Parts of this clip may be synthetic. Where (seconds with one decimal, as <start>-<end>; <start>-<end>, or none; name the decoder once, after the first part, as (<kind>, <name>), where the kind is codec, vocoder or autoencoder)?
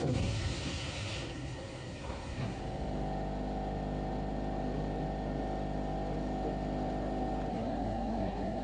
0.0-2.6 (codec, SNAC); 7.5-8.6